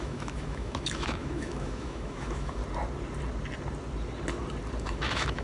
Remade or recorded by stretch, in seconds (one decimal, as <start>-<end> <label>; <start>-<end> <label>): 0.0-2.6 remade; 2.6-4.8 recorded; 4.8-5.4 remade